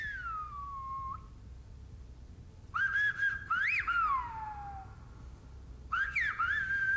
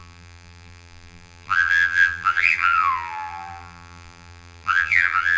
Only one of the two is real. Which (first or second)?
first